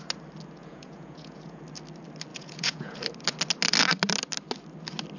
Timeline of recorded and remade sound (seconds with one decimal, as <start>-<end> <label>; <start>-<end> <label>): 0.0-0.6 recorded; 0.6-1.6 remade; 1.6-2.3 recorded; 2.3-3.0 remade; 3.0-5.2 recorded